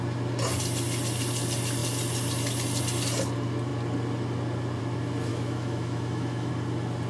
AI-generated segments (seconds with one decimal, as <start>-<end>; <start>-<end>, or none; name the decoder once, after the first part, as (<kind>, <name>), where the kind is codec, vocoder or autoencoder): 5.3-6.5 (autoencoder, DAC-VAE)